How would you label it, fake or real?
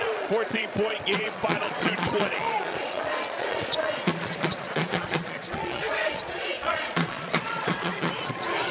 fake